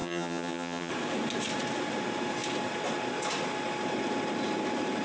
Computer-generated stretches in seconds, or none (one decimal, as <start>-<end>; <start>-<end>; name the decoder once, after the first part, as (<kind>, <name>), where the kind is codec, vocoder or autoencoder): 0.0-0.9 (vocoder, HiFi-GAN)